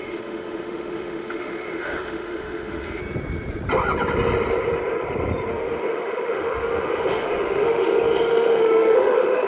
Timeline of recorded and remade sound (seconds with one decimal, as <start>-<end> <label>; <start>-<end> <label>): 0.0-3.0 remade; 3.0-5.5 recorded; 5.5-9.5 remade